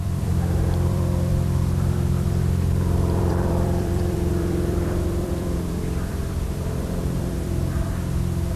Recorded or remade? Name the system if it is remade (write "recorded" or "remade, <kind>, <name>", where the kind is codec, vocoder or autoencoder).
remade, vocoder, BigVGAN v2